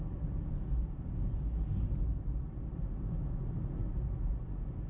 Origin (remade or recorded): recorded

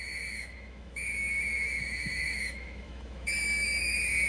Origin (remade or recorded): remade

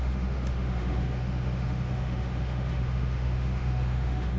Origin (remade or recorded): remade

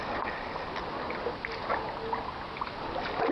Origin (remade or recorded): recorded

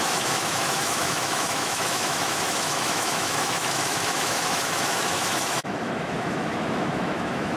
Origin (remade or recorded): remade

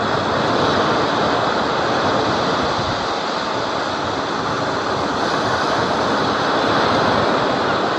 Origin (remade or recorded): recorded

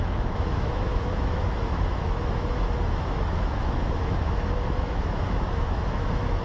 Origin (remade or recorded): remade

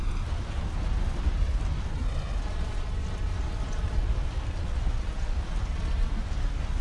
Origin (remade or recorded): recorded